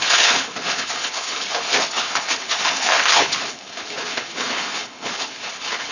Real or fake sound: fake